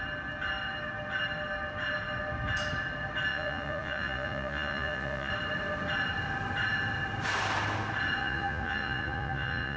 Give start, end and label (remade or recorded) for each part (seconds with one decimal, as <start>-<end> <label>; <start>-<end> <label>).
0.0-3.3 recorded; 3.3-5.3 remade; 5.3-8.2 recorded; 8.2-9.8 remade